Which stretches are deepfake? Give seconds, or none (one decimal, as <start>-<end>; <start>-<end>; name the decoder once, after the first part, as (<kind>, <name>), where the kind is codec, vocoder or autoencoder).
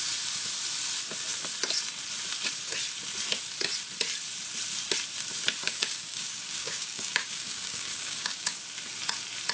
5.6-8.6 (codec, DAC)